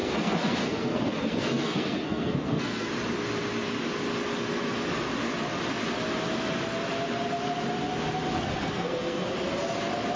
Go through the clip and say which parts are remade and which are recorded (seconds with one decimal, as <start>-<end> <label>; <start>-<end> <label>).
0.0-2.9 remade; 2.9-8.3 recorded; 8.3-9.3 remade; 9.3-10.2 recorded